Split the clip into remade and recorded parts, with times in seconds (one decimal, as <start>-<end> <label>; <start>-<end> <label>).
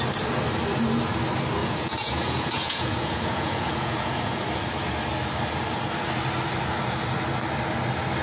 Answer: 0.0-1.6 recorded; 1.6-4.4 remade; 4.4-8.2 recorded